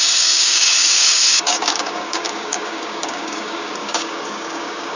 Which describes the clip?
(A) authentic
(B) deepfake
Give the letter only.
B